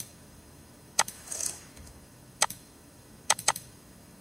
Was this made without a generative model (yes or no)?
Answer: no